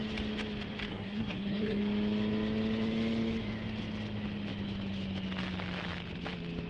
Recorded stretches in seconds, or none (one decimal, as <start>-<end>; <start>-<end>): 0.0-0.9; 1.8-6.7